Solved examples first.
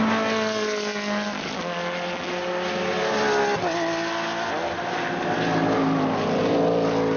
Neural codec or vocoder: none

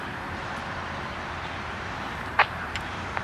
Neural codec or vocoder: vocoder, BigVGAN v2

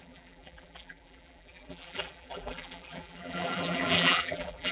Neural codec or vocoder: vocoder, BigVGAN v2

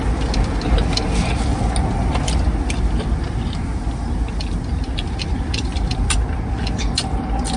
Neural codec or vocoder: none